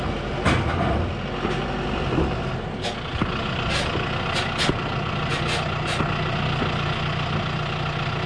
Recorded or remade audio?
recorded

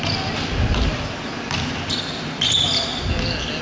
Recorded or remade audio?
recorded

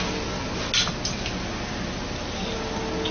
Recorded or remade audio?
recorded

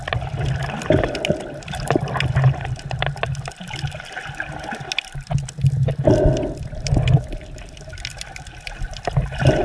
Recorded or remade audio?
recorded